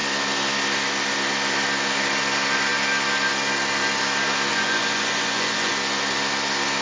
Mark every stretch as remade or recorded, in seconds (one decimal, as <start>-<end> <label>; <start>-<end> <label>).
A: 0.0-4.5 recorded; 4.5-5.7 remade; 5.7-6.8 recorded